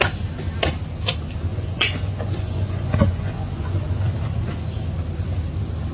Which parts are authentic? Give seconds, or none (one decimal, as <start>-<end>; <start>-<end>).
0.0-1.5; 4.1-5.9

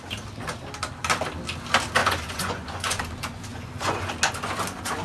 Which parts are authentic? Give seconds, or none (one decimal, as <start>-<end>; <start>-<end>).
0.0-2.0; 3.0-3.5; 4.1-5.0

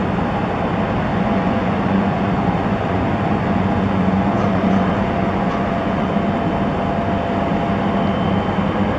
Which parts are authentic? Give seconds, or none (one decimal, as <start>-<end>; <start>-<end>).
0.0-1.1; 6.1-9.0

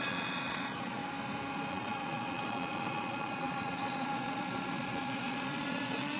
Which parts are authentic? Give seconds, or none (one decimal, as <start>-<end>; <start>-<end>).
1.0-1.7

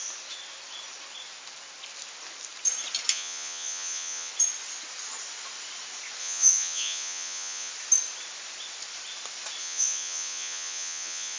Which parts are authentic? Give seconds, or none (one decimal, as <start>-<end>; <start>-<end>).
0.0-3.1; 4.3-6.2; 7.7-9.6